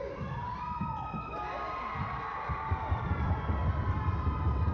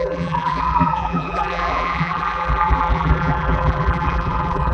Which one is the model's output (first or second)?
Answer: second